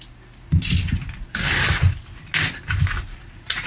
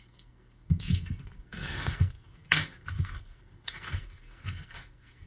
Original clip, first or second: first